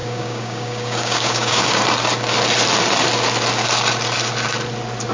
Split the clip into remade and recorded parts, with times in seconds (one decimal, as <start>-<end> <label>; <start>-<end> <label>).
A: 0.0-1.8 remade; 1.8-5.1 recorded